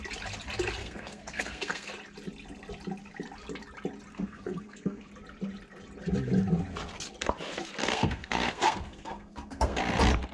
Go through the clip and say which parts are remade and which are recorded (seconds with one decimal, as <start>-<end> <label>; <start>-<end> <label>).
0.0-0.8 recorded; 0.8-1.9 remade; 1.9-4.1 recorded; 4.1-5.1 remade; 5.1-7.8 recorded; 7.8-9.8 remade; 9.8-10.3 recorded